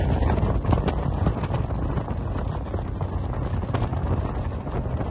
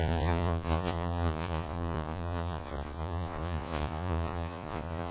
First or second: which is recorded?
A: first